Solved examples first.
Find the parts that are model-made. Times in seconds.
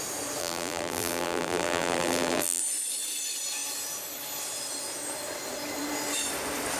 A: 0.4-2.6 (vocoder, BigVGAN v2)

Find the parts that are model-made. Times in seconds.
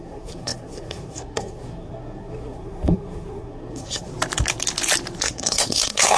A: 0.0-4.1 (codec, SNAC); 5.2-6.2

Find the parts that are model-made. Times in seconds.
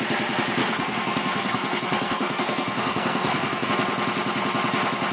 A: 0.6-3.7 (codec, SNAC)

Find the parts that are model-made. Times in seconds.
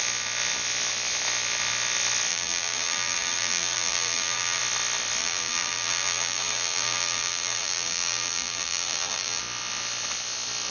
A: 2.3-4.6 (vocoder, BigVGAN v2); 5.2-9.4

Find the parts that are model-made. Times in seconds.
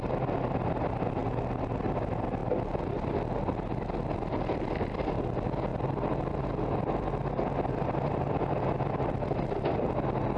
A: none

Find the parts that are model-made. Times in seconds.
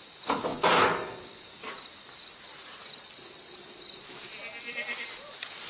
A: none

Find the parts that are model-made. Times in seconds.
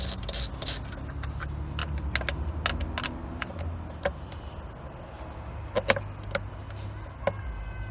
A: none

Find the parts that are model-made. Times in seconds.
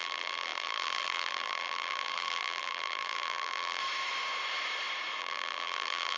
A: 0.0-3.8 (vocoder, BigVGAN v2); 5.2-6.2